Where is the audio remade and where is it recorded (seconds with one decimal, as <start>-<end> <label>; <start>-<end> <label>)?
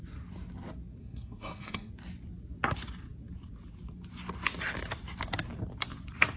0.0-1.0 recorded; 1.0-1.9 remade; 1.9-6.4 recorded